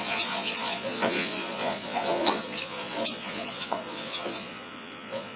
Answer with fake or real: fake